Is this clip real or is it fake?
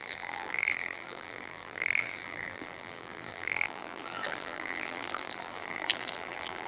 fake